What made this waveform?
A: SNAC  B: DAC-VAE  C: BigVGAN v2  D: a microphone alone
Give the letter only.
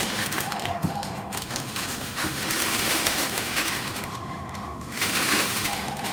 B